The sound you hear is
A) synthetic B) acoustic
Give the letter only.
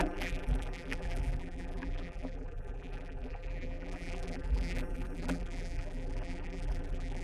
A